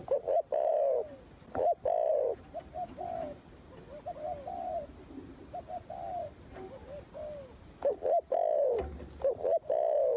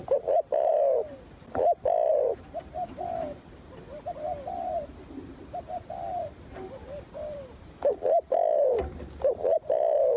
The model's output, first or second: second